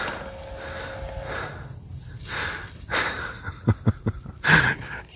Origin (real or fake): real